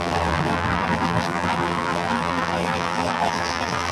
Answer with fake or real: fake